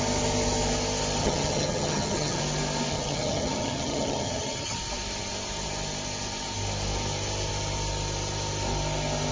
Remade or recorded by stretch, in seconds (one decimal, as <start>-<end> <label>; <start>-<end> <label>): 0.0-1.2 recorded; 1.2-2.4 remade; 2.4-2.9 recorded; 2.9-4.8 remade; 4.8-9.3 recorded

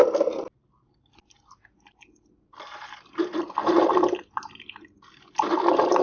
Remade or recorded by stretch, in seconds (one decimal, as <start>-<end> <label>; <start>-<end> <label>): 0.0-6.0 recorded

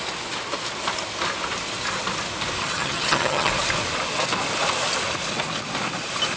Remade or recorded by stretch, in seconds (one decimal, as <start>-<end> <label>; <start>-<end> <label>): 0.0-2.6 recorded; 2.6-3.5 remade; 3.5-6.4 recorded

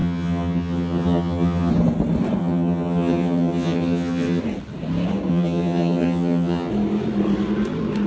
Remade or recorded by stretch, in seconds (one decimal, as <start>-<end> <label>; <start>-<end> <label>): 0.0-1.7 remade; 1.7-2.4 recorded; 2.4-4.4 remade; 4.4-5.3 recorded; 5.3-6.7 remade; 6.7-8.1 recorded

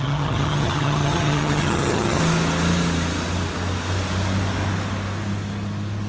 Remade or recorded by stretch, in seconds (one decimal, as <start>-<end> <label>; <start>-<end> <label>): 0.0-2.2 remade; 2.2-6.1 recorded

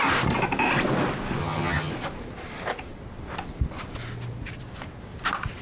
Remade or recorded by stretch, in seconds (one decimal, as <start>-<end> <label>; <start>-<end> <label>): 0.0-1.4 recorded; 1.4-1.9 remade; 1.9-5.6 recorded